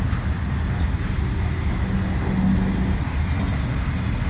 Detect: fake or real real